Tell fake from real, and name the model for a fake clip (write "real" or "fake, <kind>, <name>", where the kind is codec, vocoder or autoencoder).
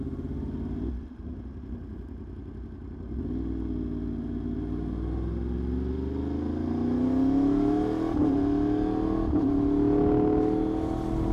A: real